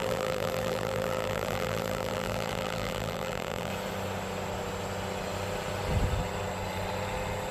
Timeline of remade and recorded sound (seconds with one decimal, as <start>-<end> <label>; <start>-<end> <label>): 0.0-3.7 remade; 3.7-7.5 recorded